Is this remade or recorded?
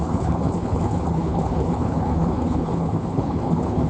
remade